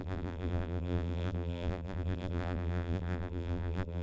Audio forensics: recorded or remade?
remade